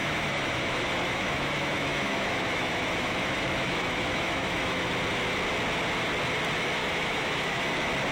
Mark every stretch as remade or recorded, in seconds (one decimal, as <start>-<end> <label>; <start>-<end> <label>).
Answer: 0.0-4.9 remade; 4.9-6.8 recorded; 6.8-7.6 remade; 7.6-8.1 recorded